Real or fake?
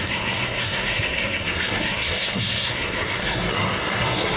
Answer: fake